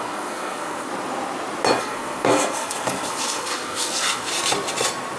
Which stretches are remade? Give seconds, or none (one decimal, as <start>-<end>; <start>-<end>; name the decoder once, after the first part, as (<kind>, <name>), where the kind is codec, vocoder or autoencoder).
0.0-0.9 (codec, SNAC); 1.8-4.3